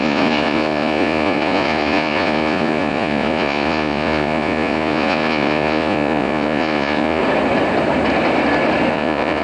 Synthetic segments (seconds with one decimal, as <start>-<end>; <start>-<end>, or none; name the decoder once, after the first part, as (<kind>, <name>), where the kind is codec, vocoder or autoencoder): 0.0-7.2 (vocoder, Vocos); 8.9-9.4